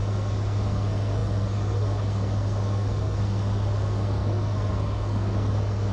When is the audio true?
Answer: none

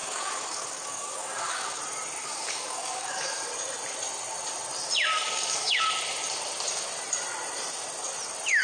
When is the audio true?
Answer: 1.8-2.2; 3.3-5.1; 5.9-8.6

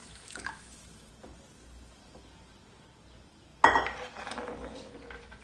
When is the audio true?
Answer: 1.1-5.4

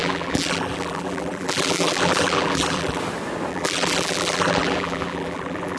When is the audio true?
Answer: 3.0-3.5